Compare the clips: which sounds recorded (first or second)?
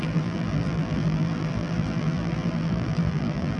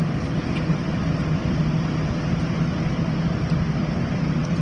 second